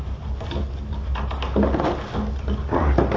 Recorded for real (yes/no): yes